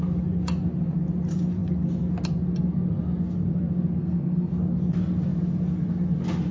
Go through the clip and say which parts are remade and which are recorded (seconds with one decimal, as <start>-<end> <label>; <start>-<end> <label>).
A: 0.0-4.0 recorded; 4.0-4.5 remade; 4.5-6.5 recorded